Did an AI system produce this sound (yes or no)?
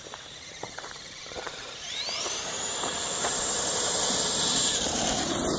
yes